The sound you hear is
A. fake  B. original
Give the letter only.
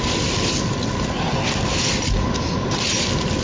B